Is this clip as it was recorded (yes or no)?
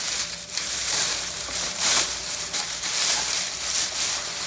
no